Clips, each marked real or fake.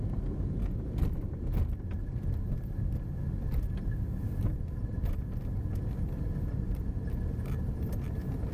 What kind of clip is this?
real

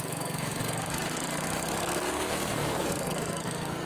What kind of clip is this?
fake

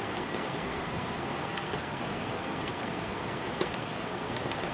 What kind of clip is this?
fake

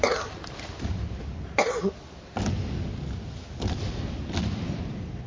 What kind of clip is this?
real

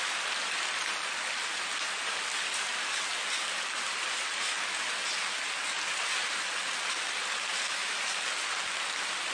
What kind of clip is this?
real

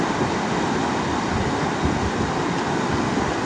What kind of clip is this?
real